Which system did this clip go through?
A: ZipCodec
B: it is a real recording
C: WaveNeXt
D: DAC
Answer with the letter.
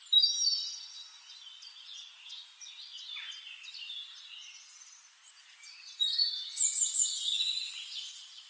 B